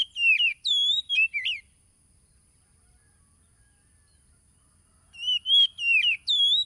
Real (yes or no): yes